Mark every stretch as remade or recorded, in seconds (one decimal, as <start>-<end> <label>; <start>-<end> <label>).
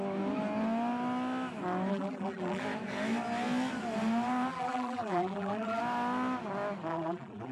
0.0-1.9 recorded; 1.9-2.6 remade; 2.6-4.5 recorded; 4.5-5.8 remade; 5.8-6.9 recorded; 6.9-7.5 remade